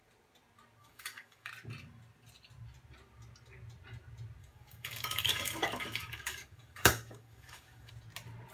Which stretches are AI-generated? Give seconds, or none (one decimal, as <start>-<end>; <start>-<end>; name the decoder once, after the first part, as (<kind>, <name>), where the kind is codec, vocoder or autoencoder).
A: 0.8-1.5 (codec, DAC); 4.4-7.9